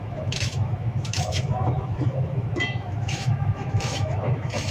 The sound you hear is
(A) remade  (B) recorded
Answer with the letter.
A